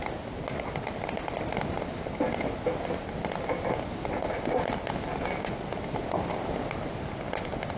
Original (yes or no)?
yes